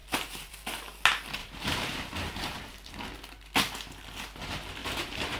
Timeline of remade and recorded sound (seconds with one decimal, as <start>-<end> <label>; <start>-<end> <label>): 0.0-0.5 remade; 0.5-1.4 recorded; 1.4-2.9 remade; 2.9-4.8 recorded; 4.8-5.4 remade